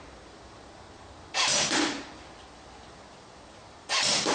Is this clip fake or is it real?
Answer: fake